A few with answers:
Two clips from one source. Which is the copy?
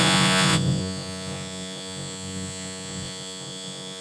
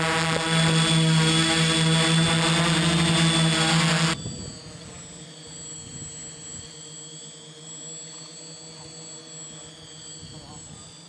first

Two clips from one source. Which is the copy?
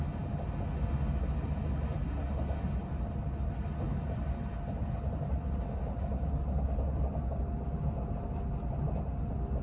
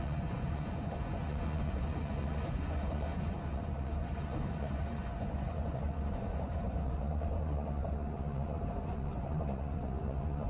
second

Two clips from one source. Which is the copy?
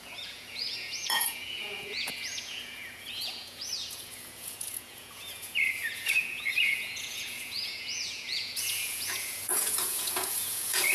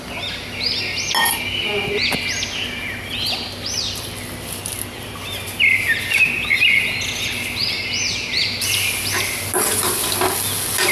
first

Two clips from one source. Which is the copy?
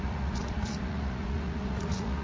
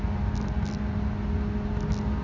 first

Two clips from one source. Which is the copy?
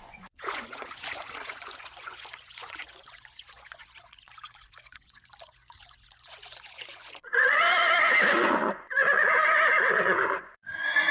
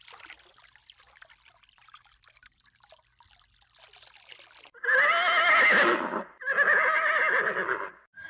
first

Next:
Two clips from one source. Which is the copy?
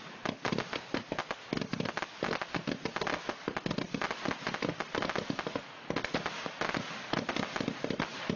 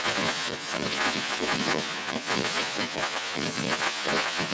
second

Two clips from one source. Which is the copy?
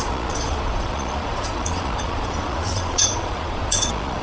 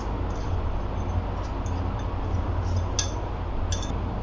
first